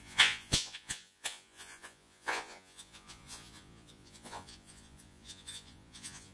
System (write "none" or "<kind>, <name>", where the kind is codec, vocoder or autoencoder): vocoder, Vocos